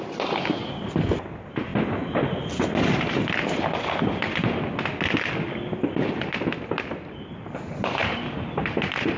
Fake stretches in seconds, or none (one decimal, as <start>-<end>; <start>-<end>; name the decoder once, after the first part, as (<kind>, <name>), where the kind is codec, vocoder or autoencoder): 8.0-9.2 (vocoder, BigVGAN v2)